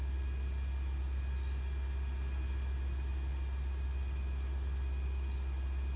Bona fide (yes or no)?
yes